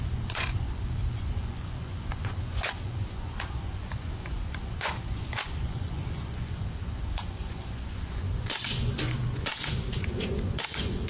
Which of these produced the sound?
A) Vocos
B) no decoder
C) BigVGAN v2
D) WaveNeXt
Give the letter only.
A